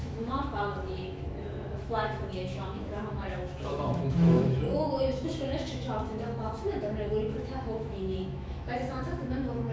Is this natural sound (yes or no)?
no